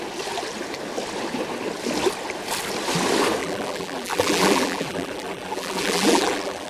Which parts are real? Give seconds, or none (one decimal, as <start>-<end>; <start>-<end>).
0.0-3.4